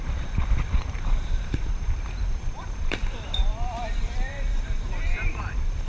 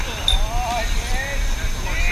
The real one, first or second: second